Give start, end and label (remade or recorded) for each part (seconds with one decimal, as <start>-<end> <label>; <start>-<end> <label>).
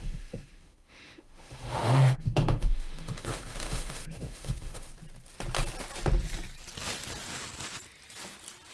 0.0-4.9 remade; 4.9-8.7 recorded